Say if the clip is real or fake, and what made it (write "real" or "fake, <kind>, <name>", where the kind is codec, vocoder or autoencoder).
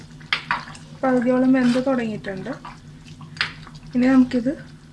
real